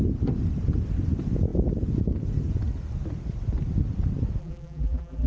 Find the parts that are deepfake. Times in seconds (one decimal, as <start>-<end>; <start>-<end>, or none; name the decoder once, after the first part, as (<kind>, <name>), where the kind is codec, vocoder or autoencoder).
4.4-5.3 (vocoder, BigVGAN v2)